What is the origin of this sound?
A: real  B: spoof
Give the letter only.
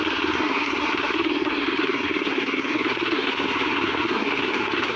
B